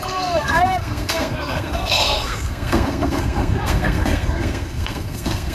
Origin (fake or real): fake